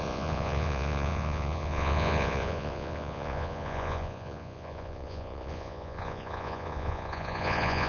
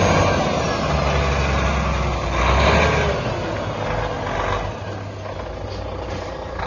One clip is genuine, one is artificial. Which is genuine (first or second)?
second